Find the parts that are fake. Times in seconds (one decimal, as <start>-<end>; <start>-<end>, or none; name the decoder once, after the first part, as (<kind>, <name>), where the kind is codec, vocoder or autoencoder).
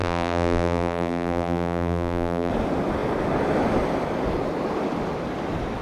0.0-2.5 (vocoder, BigVGAN v2)